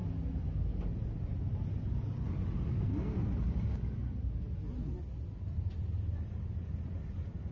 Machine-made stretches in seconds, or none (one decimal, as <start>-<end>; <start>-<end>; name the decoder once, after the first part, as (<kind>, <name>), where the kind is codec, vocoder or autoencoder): 2.8-3.2 (codec, SNAC)